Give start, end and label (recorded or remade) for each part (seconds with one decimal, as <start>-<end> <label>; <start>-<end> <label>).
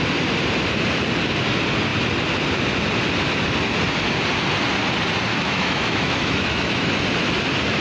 0.0-5.3 recorded; 5.3-6.9 remade; 6.9-7.8 recorded